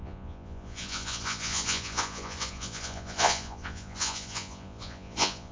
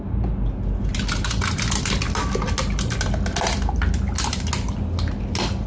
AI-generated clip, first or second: first